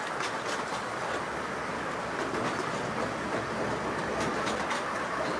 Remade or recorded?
recorded